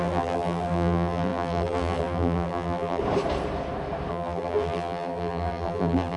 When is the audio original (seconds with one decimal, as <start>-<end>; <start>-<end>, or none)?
3.0-4.1